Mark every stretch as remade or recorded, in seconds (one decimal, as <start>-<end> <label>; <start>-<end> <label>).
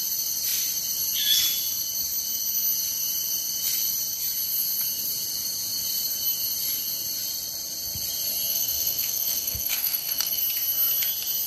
0.0-8.5 recorded; 8.5-10.4 remade; 10.4-11.5 recorded